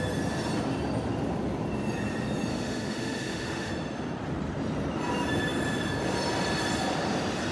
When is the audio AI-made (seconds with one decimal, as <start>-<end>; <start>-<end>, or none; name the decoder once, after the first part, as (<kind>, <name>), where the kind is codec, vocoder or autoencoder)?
2.5-3.7 (autoencoder, DAC-VAE)